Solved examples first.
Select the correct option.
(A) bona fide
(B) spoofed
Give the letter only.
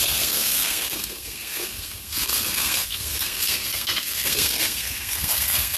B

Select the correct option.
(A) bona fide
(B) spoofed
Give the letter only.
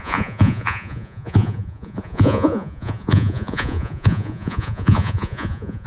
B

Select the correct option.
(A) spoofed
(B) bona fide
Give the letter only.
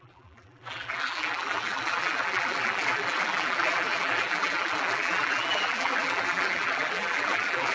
A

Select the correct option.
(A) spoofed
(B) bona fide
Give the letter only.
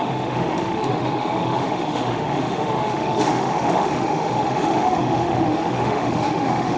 A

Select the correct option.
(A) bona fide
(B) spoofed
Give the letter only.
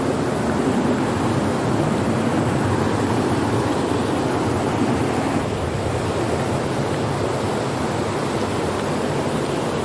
A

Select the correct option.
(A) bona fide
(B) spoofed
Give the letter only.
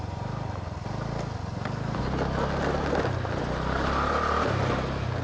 A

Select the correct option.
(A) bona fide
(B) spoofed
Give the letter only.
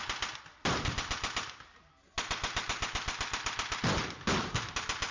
A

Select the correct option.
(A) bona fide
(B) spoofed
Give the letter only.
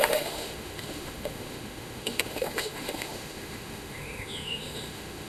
B